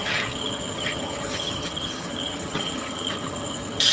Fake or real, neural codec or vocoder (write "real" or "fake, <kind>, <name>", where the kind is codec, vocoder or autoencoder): fake, vocoder, HiFi-GAN